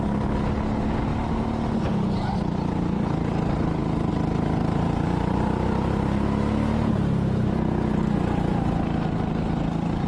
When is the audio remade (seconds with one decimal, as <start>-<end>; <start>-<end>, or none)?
none